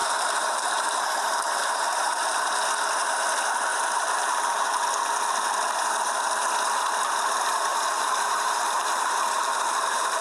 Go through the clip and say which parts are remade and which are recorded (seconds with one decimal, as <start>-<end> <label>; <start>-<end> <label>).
0.0-2.5 remade; 2.5-3.7 recorded; 3.7-4.8 remade; 4.8-7.7 recorded; 7.7-10.2 remade